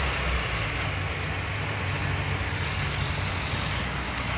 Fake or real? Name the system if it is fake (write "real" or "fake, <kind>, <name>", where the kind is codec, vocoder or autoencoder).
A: real